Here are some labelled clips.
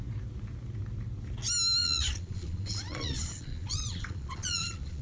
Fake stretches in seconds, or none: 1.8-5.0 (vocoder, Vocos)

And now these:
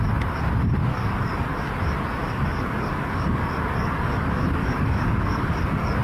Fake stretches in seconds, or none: 0.8-1.7 (codec, DAC); 2.2-6.0

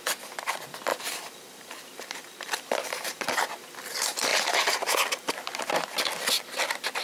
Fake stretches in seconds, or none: 0.9-3.5 (vocoder, BigVGAN v2); 4.3-5.3

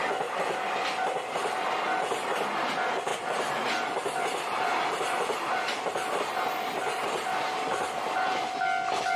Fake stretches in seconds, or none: none

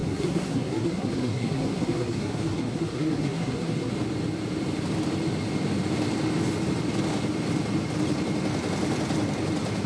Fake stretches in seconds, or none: 0.0-3.9 (codec, SNAC)

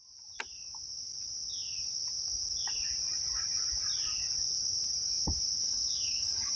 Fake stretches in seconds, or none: 5.6-6.6 (codec, HILCodec)

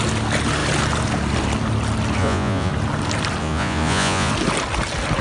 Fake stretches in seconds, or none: 2.2-2.7 (vocoder, Vocos); 3.4-4.3

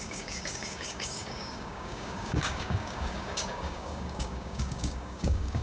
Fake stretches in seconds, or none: 0.0-5.6 (codec, DAC)